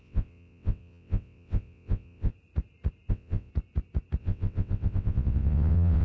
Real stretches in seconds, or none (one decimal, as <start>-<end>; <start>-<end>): 2.3-3.1; 3.5-4.2